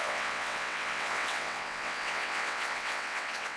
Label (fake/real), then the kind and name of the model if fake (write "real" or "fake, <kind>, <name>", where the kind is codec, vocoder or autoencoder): fake, vocoder, WaveNeXt